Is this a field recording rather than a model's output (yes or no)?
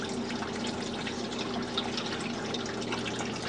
yes